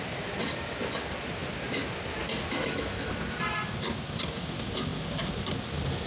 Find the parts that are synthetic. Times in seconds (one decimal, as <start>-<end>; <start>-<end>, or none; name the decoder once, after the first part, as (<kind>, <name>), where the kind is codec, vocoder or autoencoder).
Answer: 2.6-3.1 (autoencoder, DAC-VAE)